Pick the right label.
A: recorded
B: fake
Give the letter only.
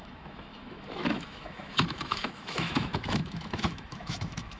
B